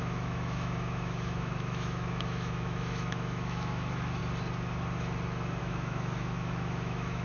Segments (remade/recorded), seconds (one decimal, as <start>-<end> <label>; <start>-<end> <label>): 0.0-4.2 remade; 4.2-5.6 recorded; 5.6-7.2 remade

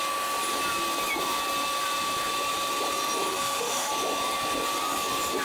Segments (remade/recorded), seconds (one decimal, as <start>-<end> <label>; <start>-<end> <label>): 0.0-3.3 recorded; 3.3-3.9 remade; 3.9-5.4 recorded

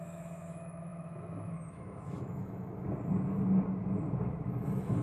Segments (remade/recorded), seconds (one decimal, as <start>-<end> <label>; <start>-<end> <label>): 0.0-2.7 remade; 2.7-4.2 recorded; 4.2-5.0 remade

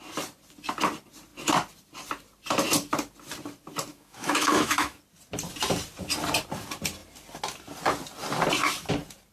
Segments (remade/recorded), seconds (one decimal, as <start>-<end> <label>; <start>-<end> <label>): 0.0-3.9 recorded; 3.9-5.0 remade; 5.0-9.3 recorded

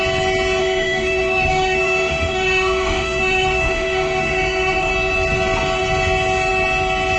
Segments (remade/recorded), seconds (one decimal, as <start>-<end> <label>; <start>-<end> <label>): 0.0-0.6 recorded; 0.6-4.9 remade; 4.9-7.2 recorded

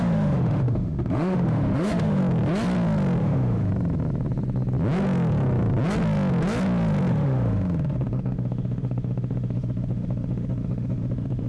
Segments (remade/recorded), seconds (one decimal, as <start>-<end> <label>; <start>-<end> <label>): 0.0-2.2 remade; 2.2-3.2 recorded; 3.2-3.7 remade; 3.7-7.1 recorded; 7.1-11.5 remade

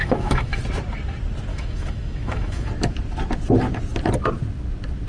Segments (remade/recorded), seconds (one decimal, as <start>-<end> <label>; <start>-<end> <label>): 0.0-0.6 remade; 0.6-1.5 recorded; 1.5-2.7 remade; 2.7-5.1 recorded